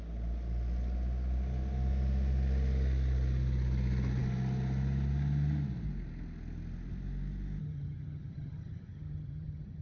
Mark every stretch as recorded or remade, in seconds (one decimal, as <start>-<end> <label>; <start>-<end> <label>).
0.0-7.6 recorded; 7.6-9.8 remade